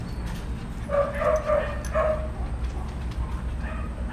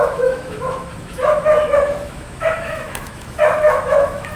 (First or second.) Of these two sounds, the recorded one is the first